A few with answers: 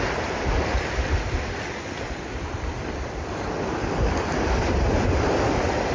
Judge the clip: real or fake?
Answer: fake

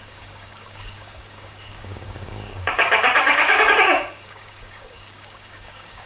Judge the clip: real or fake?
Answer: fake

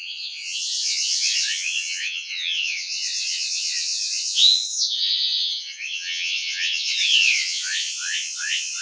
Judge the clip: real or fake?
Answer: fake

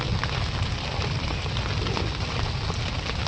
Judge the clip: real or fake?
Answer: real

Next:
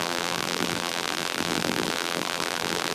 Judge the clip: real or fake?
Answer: fake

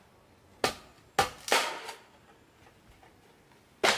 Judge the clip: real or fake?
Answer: real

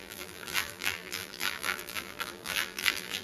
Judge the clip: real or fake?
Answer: fake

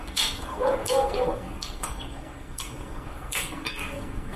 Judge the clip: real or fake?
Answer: fake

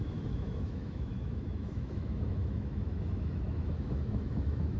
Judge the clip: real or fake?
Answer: fake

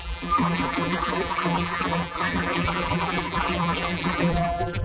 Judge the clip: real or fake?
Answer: fake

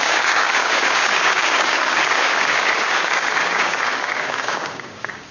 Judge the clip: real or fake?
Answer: fake